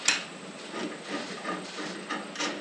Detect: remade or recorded recorded